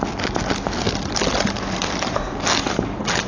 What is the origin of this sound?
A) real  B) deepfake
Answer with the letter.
A